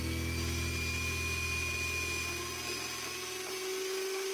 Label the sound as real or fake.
real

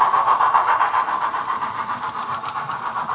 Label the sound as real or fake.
fake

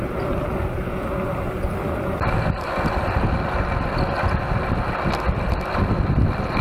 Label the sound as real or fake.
real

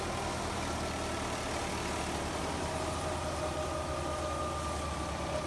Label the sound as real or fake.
real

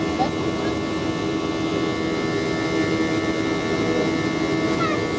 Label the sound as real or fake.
real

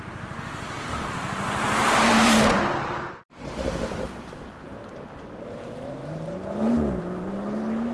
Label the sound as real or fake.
fake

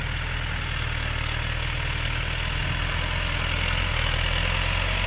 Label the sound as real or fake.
real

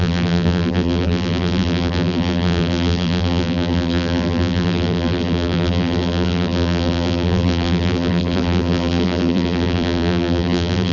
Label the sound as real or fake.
fake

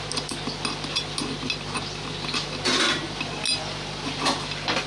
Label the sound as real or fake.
real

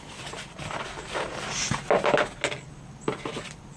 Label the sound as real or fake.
real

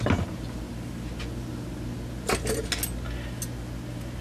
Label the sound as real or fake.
real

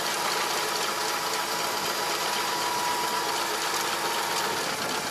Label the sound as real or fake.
real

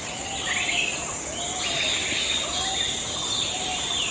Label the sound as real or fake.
real